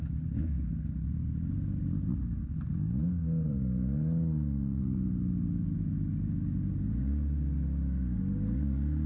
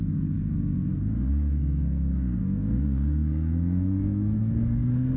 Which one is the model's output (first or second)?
second